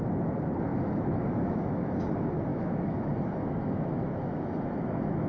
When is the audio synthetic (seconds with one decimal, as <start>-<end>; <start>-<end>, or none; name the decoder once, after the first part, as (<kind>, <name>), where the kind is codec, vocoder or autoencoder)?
0.7-2.0 (autoencoder, DAC-VAE); 2.5-5.3